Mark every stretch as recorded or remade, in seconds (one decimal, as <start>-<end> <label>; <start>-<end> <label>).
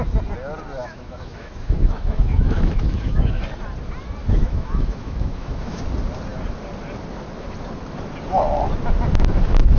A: 0.0-0.8 recorded; 0.8-3.4 remade; 3.4-4.2 recorded; 4.2-5.8 remade; 5.8-9.8 recorded